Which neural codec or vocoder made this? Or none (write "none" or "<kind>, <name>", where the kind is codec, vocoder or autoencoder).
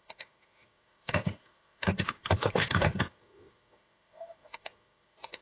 autoencoder, DAC-VAE